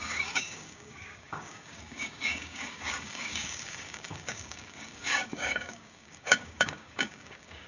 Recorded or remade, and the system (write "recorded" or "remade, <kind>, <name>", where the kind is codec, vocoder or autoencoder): remade, codec, DAC